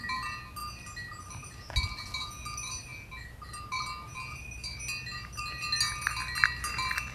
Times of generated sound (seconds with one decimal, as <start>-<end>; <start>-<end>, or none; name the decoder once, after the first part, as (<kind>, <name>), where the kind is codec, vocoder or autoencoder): none